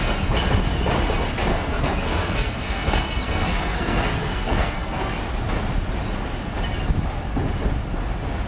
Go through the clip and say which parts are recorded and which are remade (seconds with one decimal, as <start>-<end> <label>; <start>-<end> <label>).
0.0-1.5 recorded; 1.5-5.2 remade; 5.2-8.5 recorded